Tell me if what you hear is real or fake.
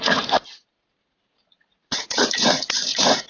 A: fake